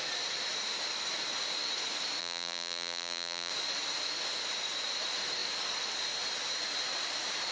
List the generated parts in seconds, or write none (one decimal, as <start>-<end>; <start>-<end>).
2.2-3.5